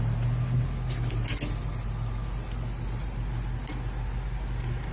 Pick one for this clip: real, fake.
real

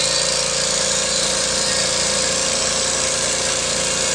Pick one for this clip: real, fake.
real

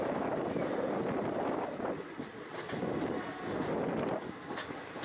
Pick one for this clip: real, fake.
real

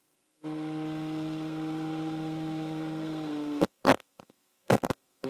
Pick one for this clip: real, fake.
fake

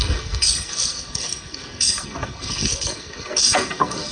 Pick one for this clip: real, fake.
fake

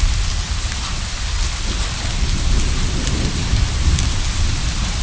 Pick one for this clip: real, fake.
real